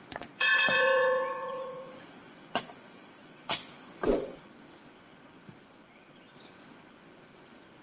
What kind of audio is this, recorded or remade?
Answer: remade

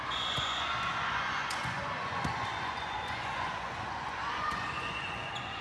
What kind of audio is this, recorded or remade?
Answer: remade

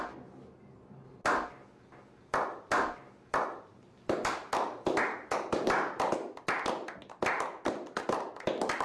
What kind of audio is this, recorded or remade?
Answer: recorded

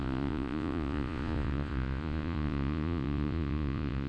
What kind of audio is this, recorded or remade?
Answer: remade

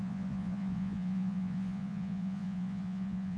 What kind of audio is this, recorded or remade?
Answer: remade